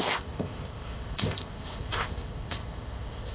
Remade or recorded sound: remade